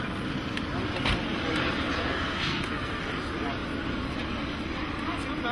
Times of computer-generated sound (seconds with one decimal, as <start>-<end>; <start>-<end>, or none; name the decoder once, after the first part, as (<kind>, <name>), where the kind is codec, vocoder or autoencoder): 2.0-3.0 (codec, SNAC)